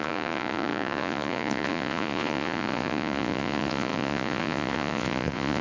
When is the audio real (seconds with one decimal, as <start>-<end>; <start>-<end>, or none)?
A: none